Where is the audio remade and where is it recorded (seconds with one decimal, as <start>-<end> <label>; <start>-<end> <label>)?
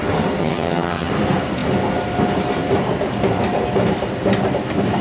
0.0-0.4 recorded; 0.4-1.1 remade; 1.1-5.0 recorded